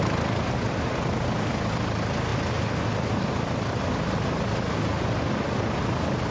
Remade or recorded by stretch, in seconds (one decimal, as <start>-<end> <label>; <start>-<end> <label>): 0.0-6.3 recorded